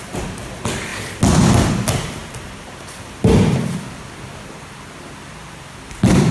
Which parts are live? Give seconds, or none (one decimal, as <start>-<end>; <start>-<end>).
0.0-6.3